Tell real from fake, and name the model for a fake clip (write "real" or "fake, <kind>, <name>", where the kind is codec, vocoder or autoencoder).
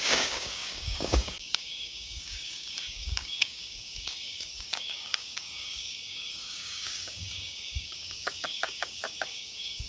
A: fake, codec, DAC